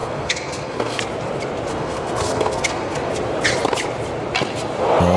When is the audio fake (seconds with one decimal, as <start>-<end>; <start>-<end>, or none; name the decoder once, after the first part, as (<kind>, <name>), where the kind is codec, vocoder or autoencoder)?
0.0-1.0 (codec, SNAC); 1.7-3.1